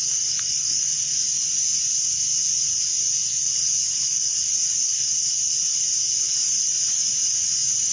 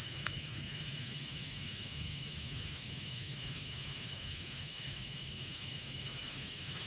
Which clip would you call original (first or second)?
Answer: first